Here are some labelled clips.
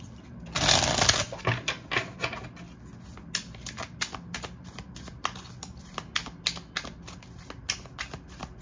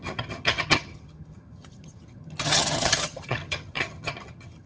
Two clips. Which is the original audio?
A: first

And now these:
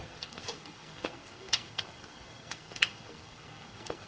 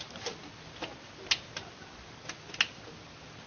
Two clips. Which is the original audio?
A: second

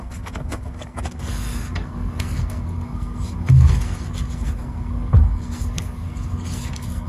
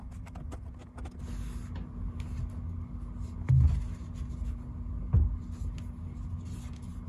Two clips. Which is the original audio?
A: second